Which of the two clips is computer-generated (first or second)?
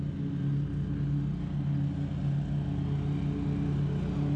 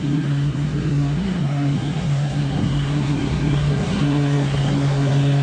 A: second